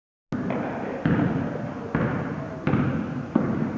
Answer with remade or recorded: recorded